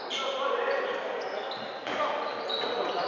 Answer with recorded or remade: recorded